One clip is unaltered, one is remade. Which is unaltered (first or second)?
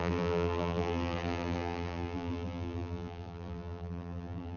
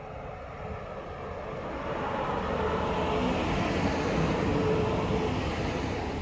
second